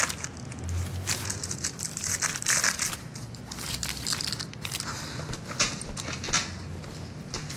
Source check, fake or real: real